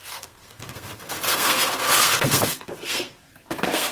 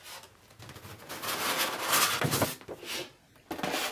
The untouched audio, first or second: second